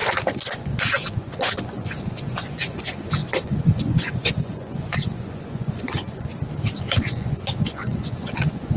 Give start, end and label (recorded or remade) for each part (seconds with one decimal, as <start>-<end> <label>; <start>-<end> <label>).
0.0-6.3 remade; 6.3-6.8 recorded; 6.8-8.8 remade